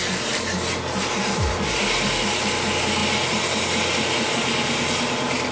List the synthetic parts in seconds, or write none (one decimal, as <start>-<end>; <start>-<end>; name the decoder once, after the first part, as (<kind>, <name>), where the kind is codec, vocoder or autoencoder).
none